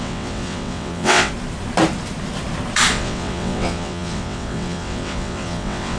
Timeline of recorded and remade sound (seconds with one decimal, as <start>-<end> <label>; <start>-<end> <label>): 0.0-1.3 remade; 1.3-2.9 recorded; 2.9-6.0 remade